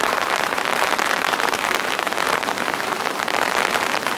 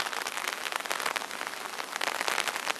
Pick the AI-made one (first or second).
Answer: first